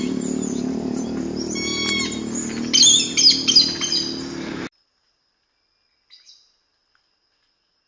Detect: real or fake real